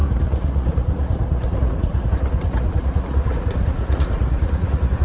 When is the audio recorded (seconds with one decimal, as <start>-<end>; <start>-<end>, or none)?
none